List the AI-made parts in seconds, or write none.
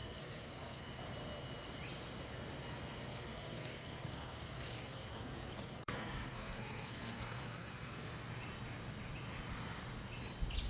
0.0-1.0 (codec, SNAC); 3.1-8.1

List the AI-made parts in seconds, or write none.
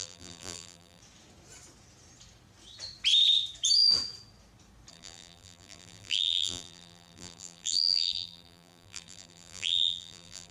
0.0-1.0 (vocoder, BigVGAN v2); 4.9-10.5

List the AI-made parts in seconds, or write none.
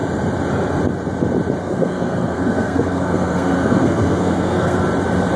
1.6-4.8 (codec, SNAC)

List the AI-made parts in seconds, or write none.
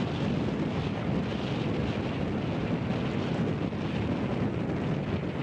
none